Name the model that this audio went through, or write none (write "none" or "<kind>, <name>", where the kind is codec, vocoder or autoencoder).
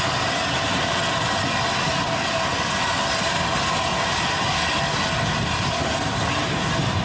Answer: none